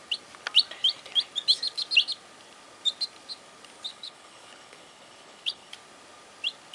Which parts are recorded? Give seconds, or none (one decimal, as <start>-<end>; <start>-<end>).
0.0-3.9; 5.7-6.7